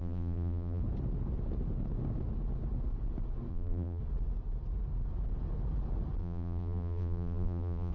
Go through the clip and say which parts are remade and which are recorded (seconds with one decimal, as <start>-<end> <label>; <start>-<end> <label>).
0.0-0.8 remade; 0.8-3.5 recorded; 3.5-4.0 remade; 4.0-6.2 recorded; 6.2-7.9 remade